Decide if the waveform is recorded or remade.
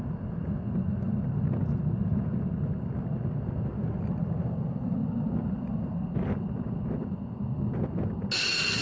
recorded